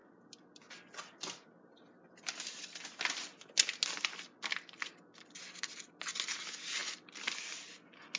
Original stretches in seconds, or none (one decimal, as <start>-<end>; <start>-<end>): 0.0-8.2